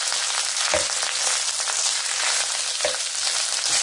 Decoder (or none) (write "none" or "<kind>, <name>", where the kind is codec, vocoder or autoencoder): none